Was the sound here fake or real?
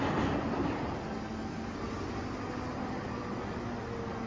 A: real